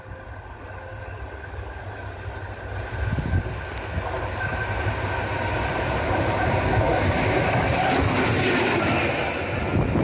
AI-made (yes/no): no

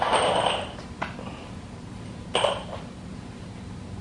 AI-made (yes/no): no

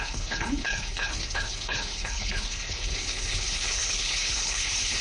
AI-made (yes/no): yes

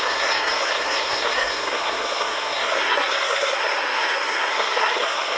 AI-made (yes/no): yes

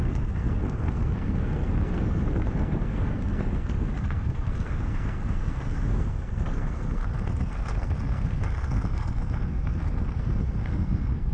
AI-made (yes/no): yes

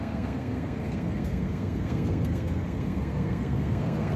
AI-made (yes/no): yes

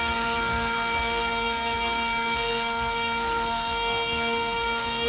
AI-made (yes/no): yes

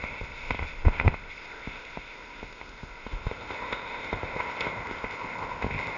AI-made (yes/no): yes